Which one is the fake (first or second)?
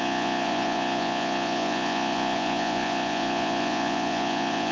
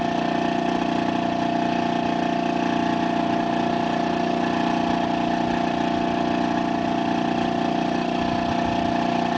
first